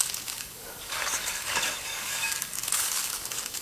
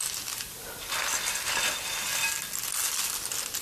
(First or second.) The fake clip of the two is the first